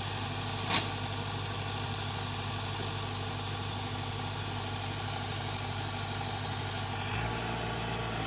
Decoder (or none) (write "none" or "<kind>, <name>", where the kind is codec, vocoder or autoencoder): none